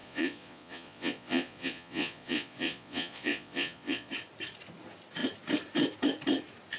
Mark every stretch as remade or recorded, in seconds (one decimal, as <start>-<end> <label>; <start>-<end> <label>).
0.0-4.1 remade; 4.1-6.8 recorded